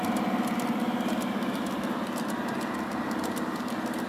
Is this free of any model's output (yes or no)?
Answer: yes